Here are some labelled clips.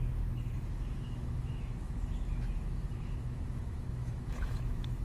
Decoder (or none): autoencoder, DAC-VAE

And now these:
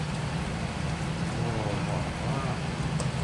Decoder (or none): none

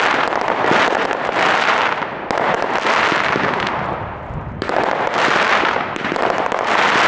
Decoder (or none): none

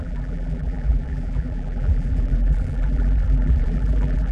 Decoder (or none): vocoder, BigVGAN v2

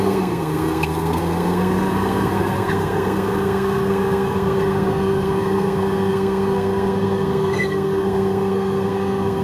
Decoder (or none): codec, SNAC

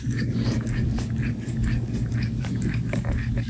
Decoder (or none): codec, DAC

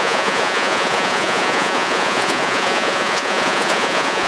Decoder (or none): vocoder, Vocos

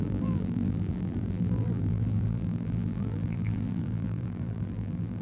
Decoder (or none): vocoder, BigVGAN v2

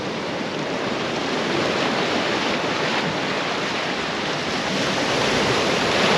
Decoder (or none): vocoder, BigVGAN v2